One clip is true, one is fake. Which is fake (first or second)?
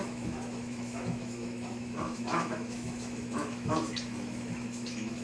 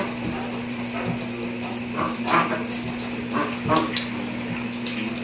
first